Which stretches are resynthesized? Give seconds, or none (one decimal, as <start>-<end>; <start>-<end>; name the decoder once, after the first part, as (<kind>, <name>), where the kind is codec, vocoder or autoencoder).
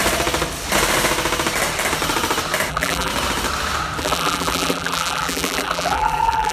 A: 2.7-3.1 (vocoder, BigVGAN v2); 4.0-6.5